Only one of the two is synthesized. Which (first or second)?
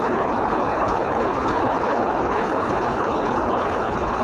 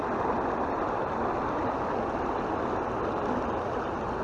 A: first